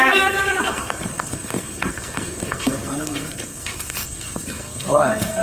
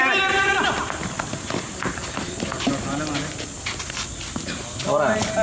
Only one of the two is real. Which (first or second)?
second